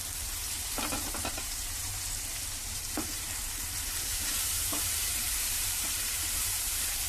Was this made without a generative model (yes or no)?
no